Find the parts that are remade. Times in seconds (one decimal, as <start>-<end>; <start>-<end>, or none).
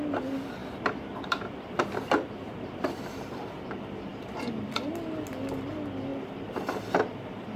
0.6-2.5; 4.1-4.9; 6.1-7.6